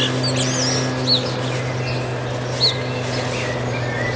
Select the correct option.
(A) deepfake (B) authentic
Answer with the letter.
B